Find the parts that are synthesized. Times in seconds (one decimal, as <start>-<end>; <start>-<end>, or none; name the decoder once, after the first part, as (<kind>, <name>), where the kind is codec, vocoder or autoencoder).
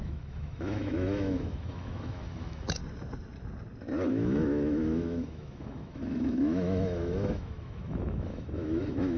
0.0-2.8 (autoencoder, DAC-VAE); 4.1-9.2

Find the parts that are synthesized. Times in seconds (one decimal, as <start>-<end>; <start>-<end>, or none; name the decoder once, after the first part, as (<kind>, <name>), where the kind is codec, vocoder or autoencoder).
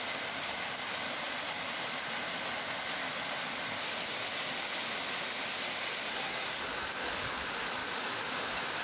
6.1-6.6 (codec, SNAC)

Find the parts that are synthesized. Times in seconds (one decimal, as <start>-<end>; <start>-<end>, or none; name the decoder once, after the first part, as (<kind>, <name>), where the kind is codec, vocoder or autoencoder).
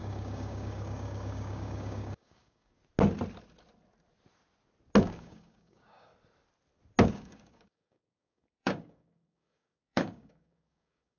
0.0-2.8 (codec, DAC); 5.0-6.1; 7.1-11.2